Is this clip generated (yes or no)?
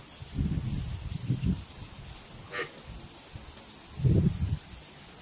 no